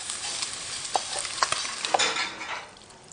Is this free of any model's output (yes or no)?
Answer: no